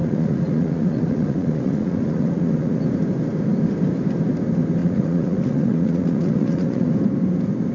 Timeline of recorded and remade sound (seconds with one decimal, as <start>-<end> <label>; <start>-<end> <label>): 0.0-2.8 remade; 2.8-4.8 recorded; 4.8-6.9 remade; 6.9-7.7 recorded